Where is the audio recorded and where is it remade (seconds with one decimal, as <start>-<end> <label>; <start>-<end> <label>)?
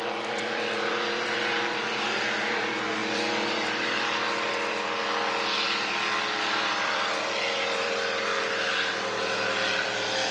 0.0-5.0 remade; 5.0-6.4 recorded; 6.4-8.3 remade; 8.3-9.7 recorded; 9.7-10.3 remade